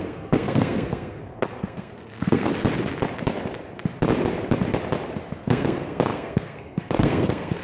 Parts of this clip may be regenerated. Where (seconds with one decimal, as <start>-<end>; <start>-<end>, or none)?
0.0-2.5; 5.4-7.6